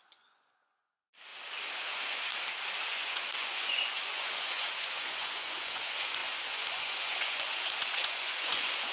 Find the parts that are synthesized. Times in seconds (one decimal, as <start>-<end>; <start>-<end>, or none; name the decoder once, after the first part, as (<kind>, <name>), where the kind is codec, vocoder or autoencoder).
0.0-1.3 (vocoder, Vocos); 1.9-2.3; 2.8-8.9